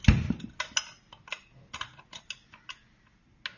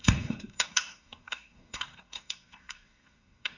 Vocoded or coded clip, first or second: second